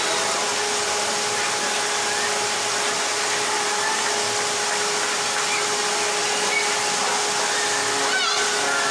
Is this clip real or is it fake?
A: real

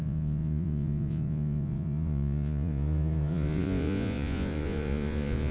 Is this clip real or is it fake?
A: fake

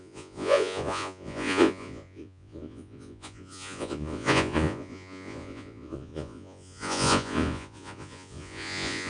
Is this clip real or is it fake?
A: fake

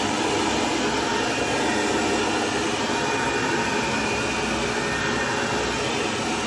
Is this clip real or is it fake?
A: real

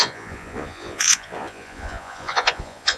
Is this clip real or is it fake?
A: fake